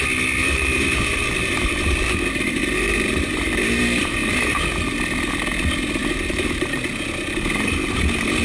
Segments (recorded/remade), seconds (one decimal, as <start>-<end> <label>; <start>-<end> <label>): 0.0-0.4 recorded; 0.4-4.6 remade; 4.6-6.0 recorded; 6.0-6.8 remade; 6.8-8.4 recorded